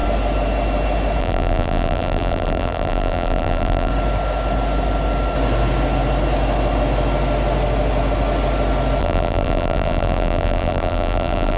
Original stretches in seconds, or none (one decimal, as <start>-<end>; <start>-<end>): 0.0-1.2; 3.9-9.0